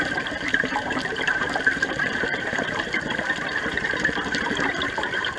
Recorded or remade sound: remade